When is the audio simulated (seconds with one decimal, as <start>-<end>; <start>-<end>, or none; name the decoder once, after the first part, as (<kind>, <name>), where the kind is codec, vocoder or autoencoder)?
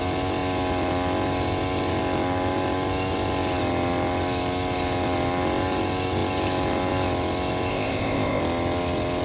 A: 7.7-8.4 (codec, ZipCodec)